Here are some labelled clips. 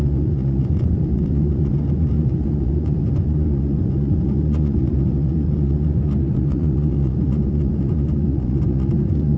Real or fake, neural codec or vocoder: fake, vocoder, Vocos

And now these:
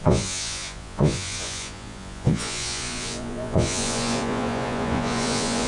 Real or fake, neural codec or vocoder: fake, vocoder, Vocos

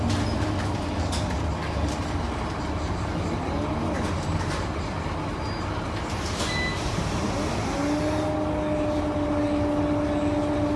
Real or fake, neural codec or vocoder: real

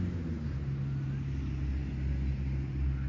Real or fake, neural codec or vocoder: real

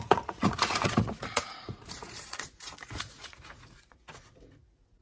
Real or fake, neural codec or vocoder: fake, vocoder, Vocos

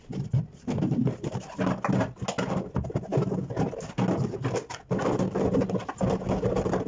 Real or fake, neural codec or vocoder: real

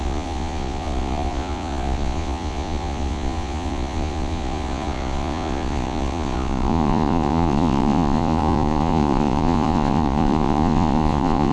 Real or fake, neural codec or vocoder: fake, vocoder, Vocos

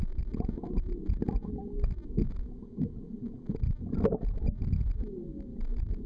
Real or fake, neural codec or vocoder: real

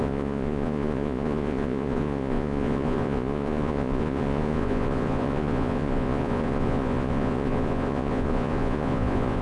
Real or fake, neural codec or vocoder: fake, vocoder, Vocos